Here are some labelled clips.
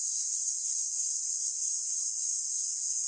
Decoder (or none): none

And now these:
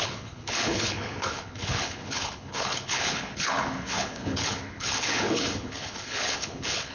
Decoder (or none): codec, HILCodec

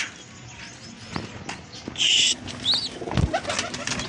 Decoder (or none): none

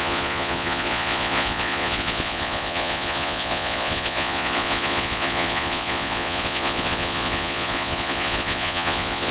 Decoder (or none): vocoder, Vocos